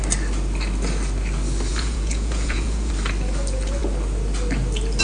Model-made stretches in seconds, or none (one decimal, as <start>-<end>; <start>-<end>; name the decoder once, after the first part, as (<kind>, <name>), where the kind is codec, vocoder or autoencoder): 1.7-2.9 (vocoder, Vocos)